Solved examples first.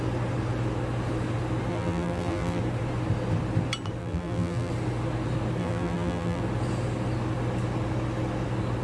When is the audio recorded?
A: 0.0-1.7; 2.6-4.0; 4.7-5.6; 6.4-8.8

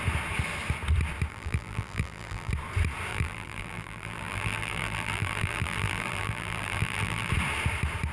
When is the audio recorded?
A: 0.0-1.3; 2.5-3.1; 7.3-8.1

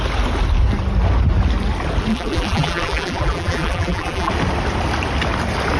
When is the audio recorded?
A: 0.0-2.1; 4.3-5.8

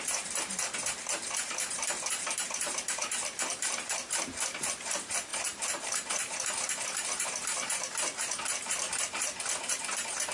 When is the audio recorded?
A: none